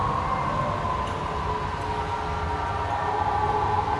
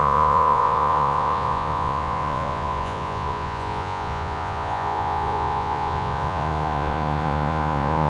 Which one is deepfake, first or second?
second